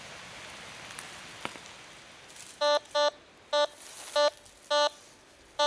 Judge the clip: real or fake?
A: real